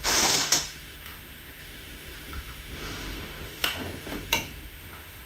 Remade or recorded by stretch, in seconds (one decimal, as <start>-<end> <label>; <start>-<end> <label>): 0.0-5.3 remade